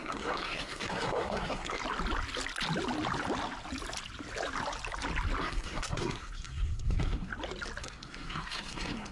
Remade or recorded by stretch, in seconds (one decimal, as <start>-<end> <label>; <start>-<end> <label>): 0.0-1.8 remade; 1.8-5.4 recorded; 5.4-7.3 remade; 7.3-7.8 recorded; 7.8-9.1 remade